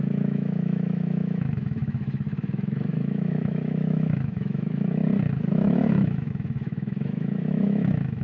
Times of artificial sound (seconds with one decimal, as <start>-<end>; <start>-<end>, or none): 0.0-5.0; 5.5-8.2